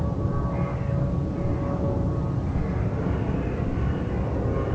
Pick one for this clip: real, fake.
real